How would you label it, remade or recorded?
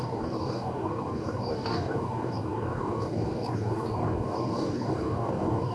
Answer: remade